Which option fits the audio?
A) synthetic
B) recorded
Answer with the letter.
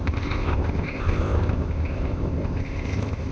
A